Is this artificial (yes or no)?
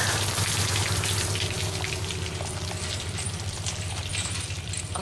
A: yes